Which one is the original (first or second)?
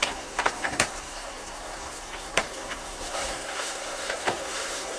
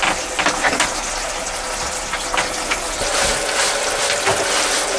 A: second